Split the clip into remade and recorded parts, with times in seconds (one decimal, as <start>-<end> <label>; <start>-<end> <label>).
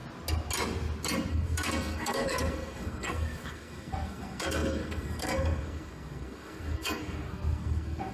0.0-1.3 recorded; 1.3-8.1 remade